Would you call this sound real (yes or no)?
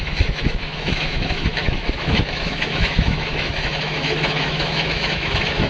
no